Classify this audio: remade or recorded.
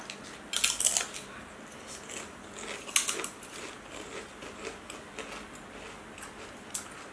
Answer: recorded